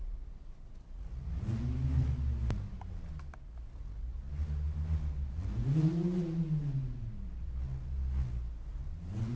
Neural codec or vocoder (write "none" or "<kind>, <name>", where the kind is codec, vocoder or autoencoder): none